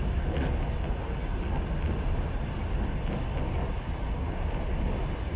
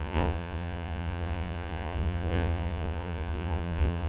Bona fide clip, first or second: first